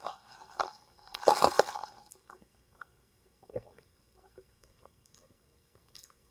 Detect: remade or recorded remade